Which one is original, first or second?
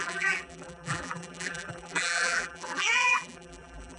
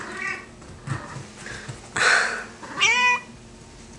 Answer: second